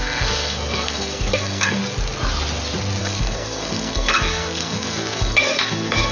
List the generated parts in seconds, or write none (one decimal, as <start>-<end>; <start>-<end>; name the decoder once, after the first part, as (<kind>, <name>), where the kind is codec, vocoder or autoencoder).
0.0-1.8 (codec, SNAC); 3.0-6.1